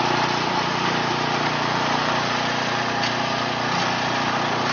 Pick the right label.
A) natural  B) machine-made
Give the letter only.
A